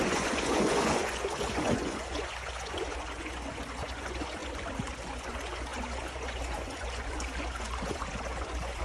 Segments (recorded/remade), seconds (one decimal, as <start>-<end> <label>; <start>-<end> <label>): 0.0-8.8 remade